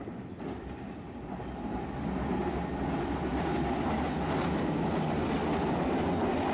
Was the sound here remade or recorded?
recorded